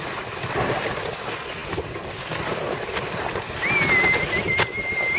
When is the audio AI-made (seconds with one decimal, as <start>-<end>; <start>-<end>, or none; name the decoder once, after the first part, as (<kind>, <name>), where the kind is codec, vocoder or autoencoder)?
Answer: none